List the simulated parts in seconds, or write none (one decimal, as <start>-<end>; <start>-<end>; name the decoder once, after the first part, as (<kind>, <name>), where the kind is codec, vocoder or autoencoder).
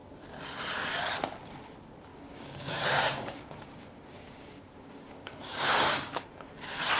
2.1-6.3 (codec, DAC)